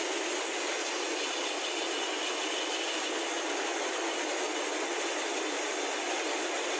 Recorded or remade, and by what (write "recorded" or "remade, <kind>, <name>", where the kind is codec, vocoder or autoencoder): recorded